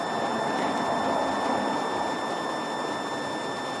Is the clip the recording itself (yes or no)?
yes